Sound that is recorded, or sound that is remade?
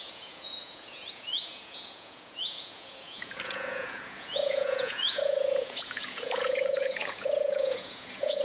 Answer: remade